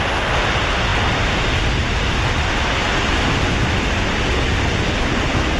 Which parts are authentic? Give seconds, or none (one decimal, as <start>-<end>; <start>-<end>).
0.0-5.6